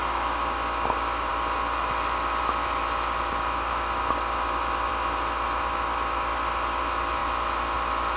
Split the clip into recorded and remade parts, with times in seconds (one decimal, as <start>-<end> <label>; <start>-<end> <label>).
0.0-8.2 recorded

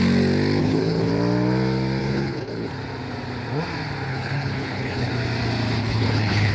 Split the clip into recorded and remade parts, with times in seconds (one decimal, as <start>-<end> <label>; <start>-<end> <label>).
0.0-0.6 recorded; 0.6-1.1 remade; 1.1-2.0 recorded; 2.0-2.7 remade; 2.7-4.1 recorded; 4.1-5.1 remade; 5.1-5.8 recorded; 5.8-6.5 remade